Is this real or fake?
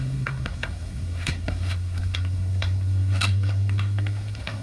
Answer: fake